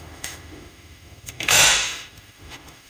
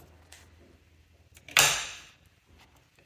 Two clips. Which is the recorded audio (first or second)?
second